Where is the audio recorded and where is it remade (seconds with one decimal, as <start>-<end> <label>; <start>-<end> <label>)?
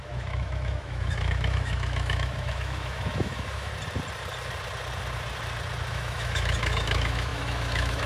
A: 0.0-3.7 remade; 3.7-5.9 recorded; 5.9-8.1 remade